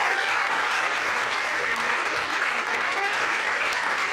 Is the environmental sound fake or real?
fake